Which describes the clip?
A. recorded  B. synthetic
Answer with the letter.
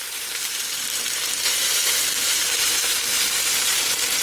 B